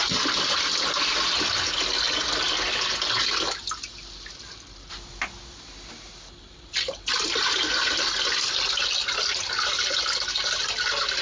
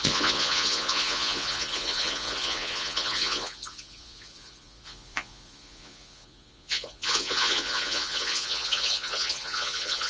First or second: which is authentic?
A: first